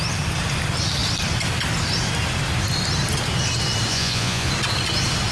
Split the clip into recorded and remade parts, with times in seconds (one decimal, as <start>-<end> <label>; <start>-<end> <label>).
0.0-3.9 recorded; 3.9-4.5 remade; 4.5-5.3 recorded